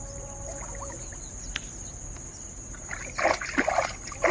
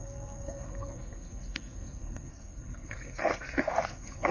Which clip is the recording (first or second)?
first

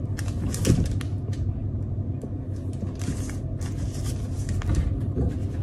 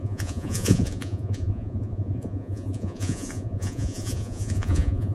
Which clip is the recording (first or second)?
first